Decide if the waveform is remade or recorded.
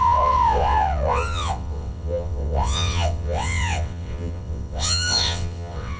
remade